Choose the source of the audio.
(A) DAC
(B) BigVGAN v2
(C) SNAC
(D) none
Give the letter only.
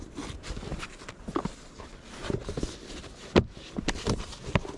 D